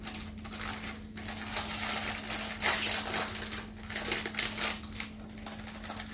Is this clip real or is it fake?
real